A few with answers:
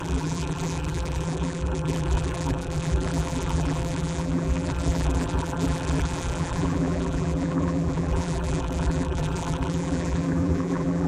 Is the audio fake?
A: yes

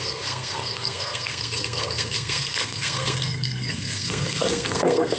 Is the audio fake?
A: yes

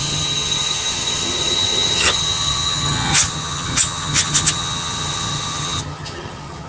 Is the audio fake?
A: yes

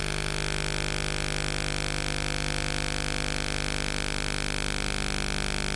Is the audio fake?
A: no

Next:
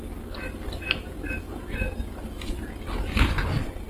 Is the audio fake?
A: no